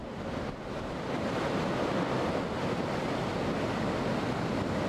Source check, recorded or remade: recorded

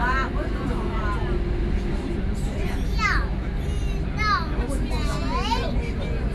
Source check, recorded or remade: recorded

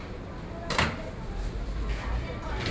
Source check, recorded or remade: recorded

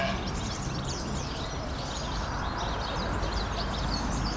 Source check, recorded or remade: recorded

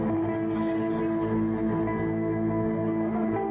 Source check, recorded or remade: recorded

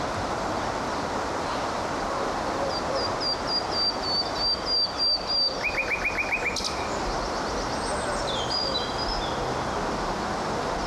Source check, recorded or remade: recorded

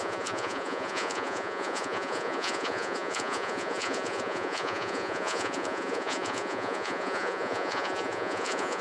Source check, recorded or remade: remade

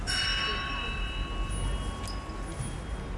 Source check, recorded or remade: recorded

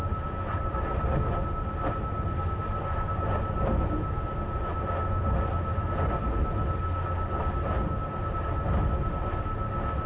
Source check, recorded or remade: recorded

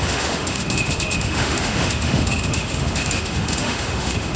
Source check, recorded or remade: remade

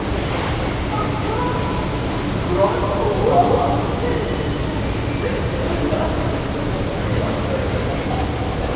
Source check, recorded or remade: recorded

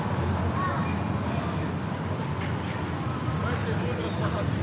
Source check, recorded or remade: recorded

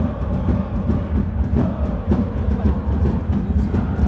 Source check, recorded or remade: recorded